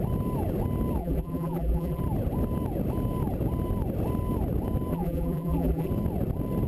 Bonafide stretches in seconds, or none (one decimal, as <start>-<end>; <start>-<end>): 0.0-1.0; 2.0-4.9; 5.9-6.7